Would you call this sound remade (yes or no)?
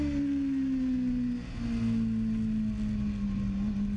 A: no